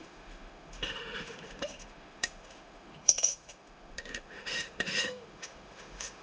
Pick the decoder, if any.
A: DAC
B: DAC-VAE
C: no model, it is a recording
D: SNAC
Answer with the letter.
B